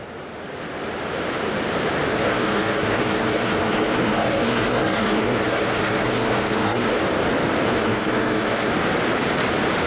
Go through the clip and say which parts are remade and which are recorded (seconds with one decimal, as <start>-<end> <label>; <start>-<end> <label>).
0.0-2.1 recorded; 2.1-7.0 remade; 7.0-7.7 recorded; 7.7-8.7 remade; 8.7-9.9 recorded